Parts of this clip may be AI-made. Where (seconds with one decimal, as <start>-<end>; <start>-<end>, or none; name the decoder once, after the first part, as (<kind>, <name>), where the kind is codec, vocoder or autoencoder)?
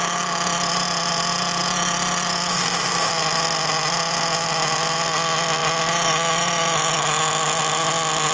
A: 2.5-3.1 (autoencoder, DAC-VAE)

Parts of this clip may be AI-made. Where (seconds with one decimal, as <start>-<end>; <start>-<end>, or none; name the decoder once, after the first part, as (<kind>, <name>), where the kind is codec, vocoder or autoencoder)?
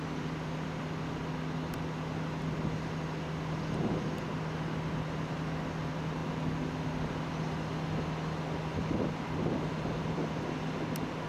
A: none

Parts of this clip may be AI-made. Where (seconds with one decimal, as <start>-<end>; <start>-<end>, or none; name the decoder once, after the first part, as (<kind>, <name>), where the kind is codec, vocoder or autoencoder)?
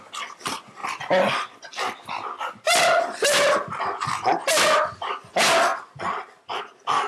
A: none